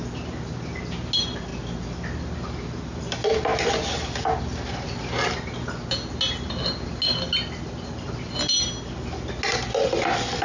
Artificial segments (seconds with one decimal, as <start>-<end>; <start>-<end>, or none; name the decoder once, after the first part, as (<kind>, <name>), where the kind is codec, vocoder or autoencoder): none